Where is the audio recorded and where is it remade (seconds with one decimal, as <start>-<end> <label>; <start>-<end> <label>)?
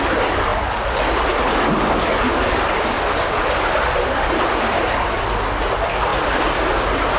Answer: 0.0-7.2 recorded